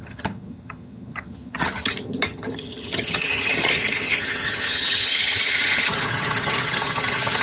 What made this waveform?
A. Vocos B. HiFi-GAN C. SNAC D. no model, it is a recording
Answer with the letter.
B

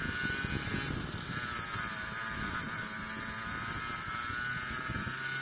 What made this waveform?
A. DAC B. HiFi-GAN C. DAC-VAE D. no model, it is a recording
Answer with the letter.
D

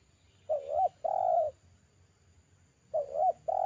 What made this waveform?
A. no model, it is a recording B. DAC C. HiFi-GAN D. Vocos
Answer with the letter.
A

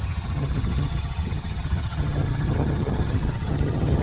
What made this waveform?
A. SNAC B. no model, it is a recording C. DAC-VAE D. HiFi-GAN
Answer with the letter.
D